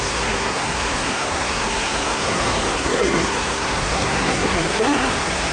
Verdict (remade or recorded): remade